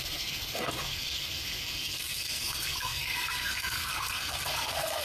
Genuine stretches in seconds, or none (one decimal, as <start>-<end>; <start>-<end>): none